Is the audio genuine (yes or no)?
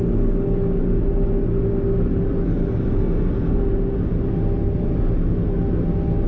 yes